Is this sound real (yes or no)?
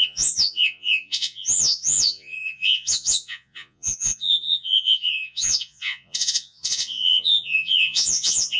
no